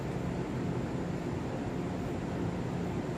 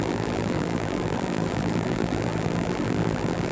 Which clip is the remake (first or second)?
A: second